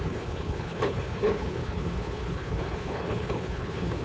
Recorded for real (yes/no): no